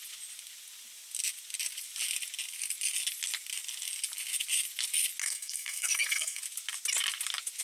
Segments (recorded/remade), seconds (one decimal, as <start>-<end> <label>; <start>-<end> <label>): 0.0-5.2 recorded; 5.2-6.4 remade; 6.4-7.6 recorded